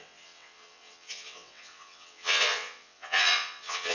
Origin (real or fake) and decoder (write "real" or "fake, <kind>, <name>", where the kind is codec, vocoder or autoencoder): fake, vocoder, WaveNeXt